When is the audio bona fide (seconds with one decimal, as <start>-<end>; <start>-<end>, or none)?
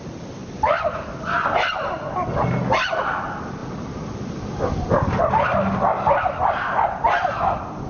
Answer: 0.0-7.9